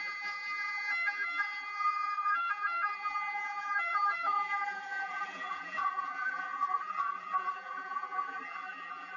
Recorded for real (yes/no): no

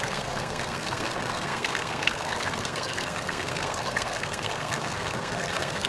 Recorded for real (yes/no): no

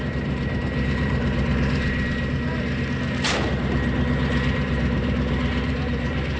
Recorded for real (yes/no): no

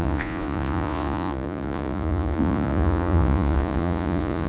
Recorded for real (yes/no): no